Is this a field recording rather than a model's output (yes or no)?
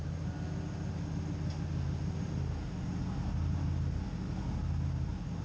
yes